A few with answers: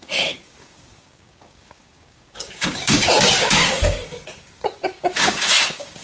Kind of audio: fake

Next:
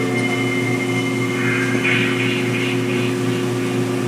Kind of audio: real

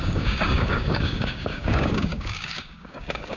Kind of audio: fake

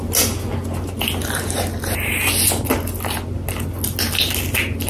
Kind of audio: real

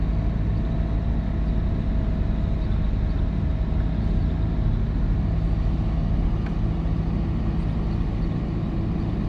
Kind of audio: real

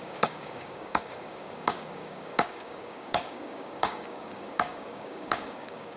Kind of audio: fake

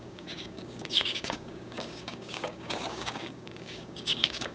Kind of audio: fake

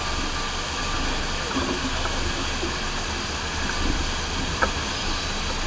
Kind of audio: real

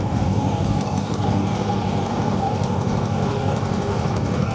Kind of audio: fake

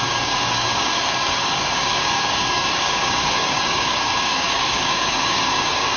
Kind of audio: fake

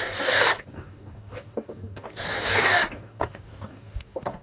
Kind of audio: fake